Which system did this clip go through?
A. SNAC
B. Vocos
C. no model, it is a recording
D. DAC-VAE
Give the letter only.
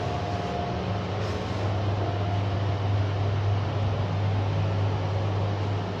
C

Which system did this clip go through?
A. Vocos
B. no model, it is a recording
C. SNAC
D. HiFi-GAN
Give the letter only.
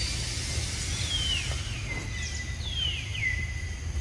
B